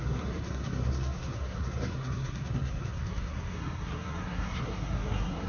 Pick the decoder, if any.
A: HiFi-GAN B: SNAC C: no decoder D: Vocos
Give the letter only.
B